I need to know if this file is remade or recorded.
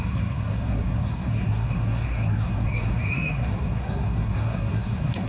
remade